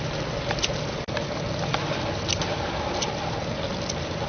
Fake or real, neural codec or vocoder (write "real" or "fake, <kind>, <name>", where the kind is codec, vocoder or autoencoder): real